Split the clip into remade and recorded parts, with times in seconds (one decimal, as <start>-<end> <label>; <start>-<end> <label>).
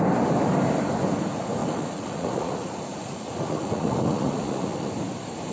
0.0-1.6 recorded; 1.6-4.9 remade; 4.9-5.5 recorded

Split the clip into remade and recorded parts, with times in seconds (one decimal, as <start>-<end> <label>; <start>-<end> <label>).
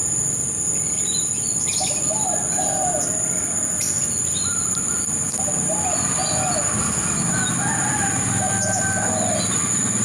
0.0-10.0 recorded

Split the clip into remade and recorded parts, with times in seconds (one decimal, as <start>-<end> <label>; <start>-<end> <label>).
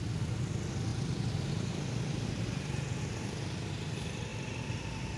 0.0-0.9 recorded; 0.9-3.4 remade; 3.4-5.2 recorded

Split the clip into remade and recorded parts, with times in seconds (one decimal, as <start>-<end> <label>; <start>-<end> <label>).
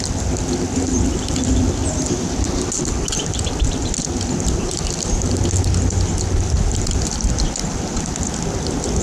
0.0-1.8 recorded; 1.8-2.6 remade; 2.6-9.0 recorded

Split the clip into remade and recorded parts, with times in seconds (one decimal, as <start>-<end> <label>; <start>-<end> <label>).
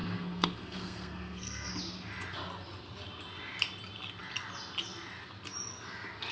0.0-1.7 remade; 1.7-6.3 recorded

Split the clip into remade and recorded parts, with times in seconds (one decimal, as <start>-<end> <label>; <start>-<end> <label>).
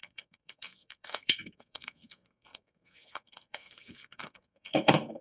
0.0-5.2 remade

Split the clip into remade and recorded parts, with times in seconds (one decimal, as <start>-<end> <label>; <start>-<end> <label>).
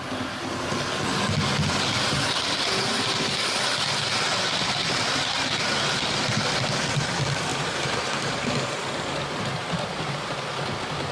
0.0-7.5 recorded; 7.5-10.2 remade; 10.2-11.1 recorded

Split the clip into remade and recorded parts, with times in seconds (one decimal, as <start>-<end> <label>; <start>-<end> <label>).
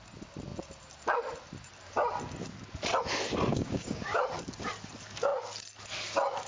0.0-3.5 recorded; 3.5-4.2 remade; 4.2-6.5 recorded